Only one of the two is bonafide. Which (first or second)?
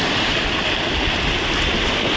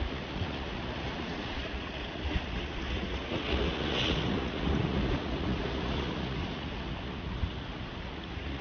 first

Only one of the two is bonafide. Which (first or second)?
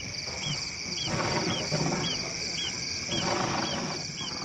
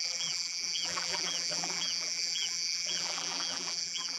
first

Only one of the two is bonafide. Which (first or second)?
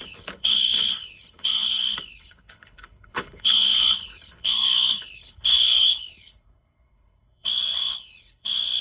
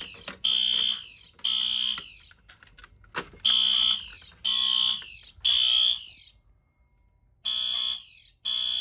second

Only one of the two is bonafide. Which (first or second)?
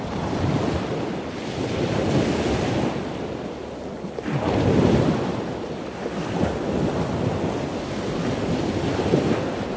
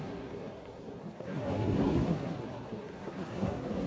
first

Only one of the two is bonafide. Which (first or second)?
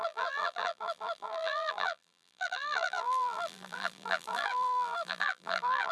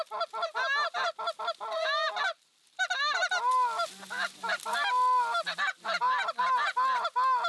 second